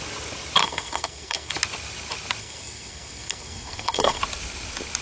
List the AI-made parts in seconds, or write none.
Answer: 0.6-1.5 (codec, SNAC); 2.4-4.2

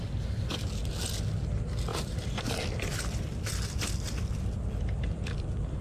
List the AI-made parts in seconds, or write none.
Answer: 1.9-5.8 (vocoder, BigVGAN v2)

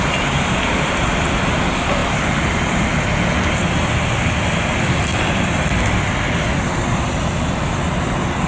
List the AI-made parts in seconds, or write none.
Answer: none

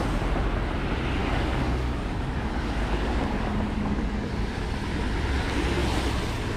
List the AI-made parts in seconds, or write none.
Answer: 1.2-4.3 (codec, DAC)

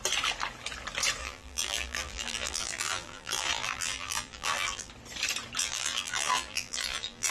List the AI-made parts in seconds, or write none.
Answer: 1.2-4.9 (vocoder, BigVGAN v2); 5.6-7.3

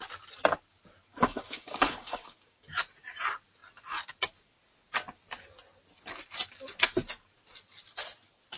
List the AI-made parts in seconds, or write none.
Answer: 1.1-2.6 (codec, DAC)